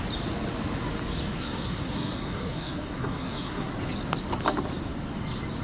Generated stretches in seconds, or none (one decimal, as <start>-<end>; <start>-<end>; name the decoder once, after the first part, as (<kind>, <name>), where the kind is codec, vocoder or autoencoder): 1.4-3.7 (codec, SNAC)